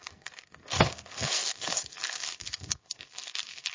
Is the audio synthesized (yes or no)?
yes